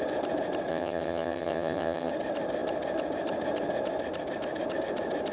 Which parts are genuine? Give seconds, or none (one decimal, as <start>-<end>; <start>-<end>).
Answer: 0.0-0.7; 2.1-5.3